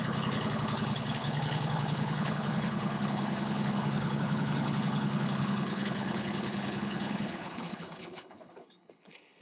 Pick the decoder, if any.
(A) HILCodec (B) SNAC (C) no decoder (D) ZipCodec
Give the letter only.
A